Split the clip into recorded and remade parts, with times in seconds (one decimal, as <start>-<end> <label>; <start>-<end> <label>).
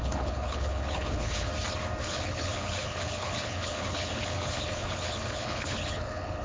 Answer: 0.0-1.5 remade; 1.5-2.0 recorded; 2.0-6.4 remade